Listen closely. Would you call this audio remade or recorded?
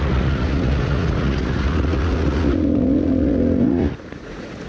remade